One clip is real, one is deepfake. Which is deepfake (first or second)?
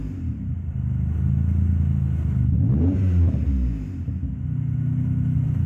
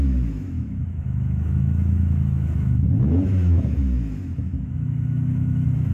second